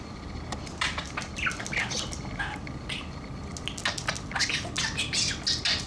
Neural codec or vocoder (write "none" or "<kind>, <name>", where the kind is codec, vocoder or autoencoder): none